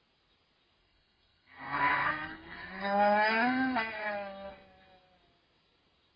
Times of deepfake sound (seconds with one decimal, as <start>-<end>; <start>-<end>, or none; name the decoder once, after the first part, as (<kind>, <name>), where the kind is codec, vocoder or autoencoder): 0.8-4.5 (codec, SNAC)